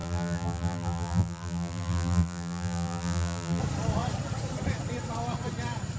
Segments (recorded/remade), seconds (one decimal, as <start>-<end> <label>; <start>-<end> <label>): 0.0-3.6 remade; 3.6-6.0 recorded